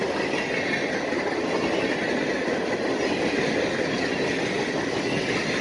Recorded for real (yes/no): yes